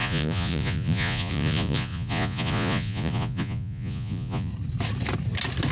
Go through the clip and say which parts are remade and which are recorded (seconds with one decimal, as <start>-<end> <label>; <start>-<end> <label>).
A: 0.0-4.5 remade; 4.5-5.7 recorded